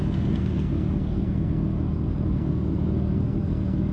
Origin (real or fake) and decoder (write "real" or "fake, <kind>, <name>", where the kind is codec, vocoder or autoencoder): fake, codec, SNAC